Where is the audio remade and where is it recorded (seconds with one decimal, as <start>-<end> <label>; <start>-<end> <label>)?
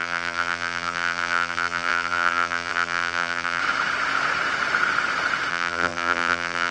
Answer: 0.0-3.6 remade; 3.6-5.5 recorded; 5.5-6.7 remade